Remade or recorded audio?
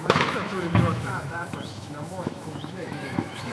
remade